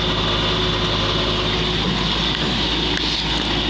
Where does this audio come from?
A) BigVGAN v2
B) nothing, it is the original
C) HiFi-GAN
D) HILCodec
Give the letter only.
B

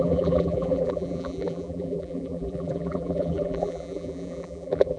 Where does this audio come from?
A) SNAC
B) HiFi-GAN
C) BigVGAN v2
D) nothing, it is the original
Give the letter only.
C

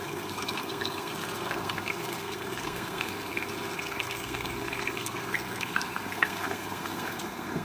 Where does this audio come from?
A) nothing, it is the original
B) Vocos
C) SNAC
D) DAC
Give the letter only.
C